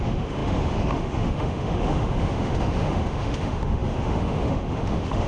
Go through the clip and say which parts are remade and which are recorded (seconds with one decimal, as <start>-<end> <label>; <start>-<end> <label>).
0.0-5.3 remade